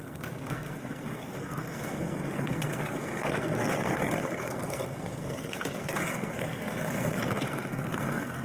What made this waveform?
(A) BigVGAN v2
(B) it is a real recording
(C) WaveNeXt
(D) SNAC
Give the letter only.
D